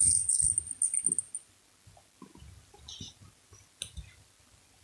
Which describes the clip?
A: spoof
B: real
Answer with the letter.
B